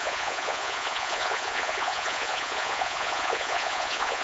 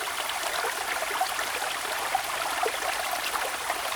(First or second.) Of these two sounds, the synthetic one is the first